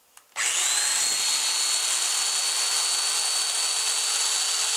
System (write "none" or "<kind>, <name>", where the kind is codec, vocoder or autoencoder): none